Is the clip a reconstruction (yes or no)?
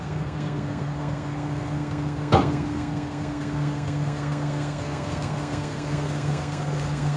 yes